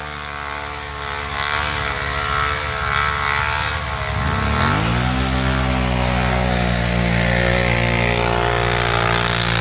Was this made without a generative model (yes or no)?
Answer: yes